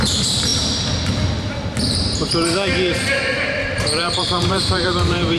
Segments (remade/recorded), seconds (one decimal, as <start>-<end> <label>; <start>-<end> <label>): 0.0-0.5 remade; 0.5-3.7 recorded; 3.7-5.4 remade